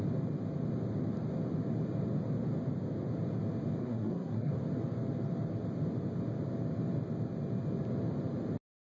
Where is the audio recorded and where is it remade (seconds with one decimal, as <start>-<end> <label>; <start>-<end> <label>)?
0.0-3.8 recorded; 3.8-4.5 remade; 4.5-8.9 recorded